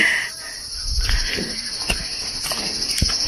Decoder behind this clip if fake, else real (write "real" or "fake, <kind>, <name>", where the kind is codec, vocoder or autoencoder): real